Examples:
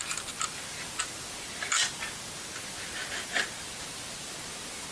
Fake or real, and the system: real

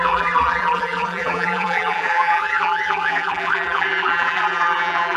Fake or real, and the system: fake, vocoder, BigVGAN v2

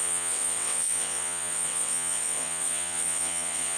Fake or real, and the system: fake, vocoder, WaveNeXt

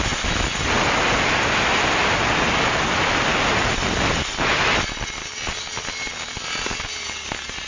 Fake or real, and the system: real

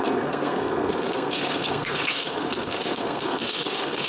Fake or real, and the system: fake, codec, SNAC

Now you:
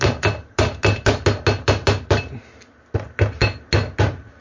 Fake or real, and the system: real